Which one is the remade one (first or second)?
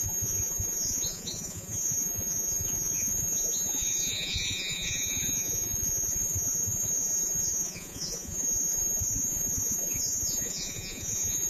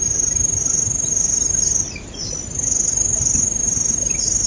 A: first